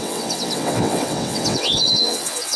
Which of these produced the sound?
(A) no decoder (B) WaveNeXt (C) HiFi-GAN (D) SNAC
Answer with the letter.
B